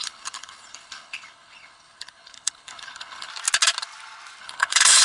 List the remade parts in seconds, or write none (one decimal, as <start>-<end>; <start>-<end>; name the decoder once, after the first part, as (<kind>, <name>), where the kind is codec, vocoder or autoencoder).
0.0-3.3 (codec, HILCodec); 4.4-5.0